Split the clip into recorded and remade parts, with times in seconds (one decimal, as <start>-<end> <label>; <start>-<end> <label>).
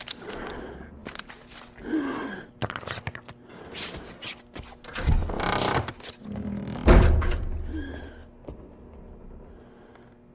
0.0-10.3 recorded